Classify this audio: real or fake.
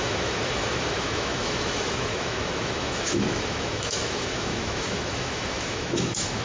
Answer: fake